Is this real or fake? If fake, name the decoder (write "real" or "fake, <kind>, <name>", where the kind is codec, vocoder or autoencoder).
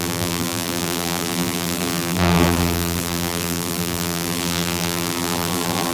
fake, vocoder, BigVGAN v2